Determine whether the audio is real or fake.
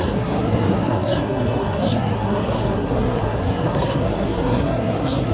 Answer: fake